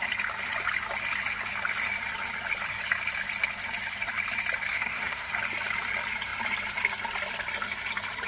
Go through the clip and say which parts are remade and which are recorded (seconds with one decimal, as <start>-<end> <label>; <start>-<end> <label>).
0.0-4.7 recorded; 4.7-5.3 remade; 5.3-8.3 recorded